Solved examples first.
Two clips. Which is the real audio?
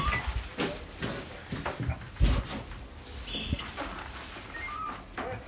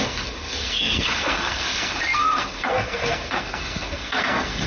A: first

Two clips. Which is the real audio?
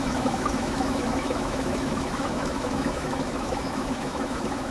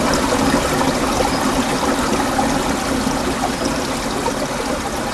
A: second